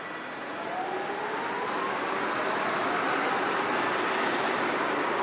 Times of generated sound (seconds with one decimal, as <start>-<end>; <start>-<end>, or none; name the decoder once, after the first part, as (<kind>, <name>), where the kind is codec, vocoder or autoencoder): none